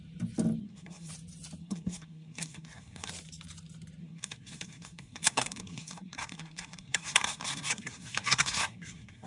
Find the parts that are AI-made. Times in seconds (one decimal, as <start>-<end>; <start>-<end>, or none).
0.6-1.1; 1.6-3.1; 4.0-9.3